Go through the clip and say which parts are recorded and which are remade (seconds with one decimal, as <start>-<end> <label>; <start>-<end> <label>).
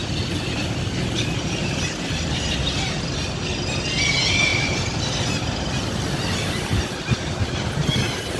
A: 0.0-2.7 remade; 2.7-4.5 recorded; 4.5-6.0 remade; 6.0-8.4 recorded